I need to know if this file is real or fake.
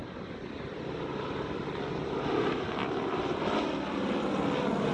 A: real